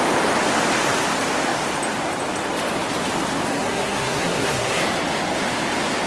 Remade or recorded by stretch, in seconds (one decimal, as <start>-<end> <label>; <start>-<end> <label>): 0.0-3.5 recorded; 3.5-4.8 remade; 4.8-6.1 recorded